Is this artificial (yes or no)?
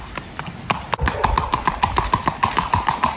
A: no